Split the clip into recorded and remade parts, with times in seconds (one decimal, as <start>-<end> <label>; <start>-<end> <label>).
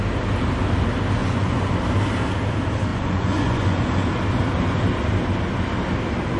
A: 0.0-1.2 recorded; 1.2-1.7 remade; 1.7-2.9 recorded; 2.9-3.9 remade; 3.9-6.4 recorded